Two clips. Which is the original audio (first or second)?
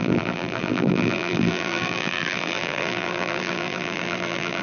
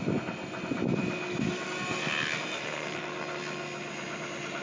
second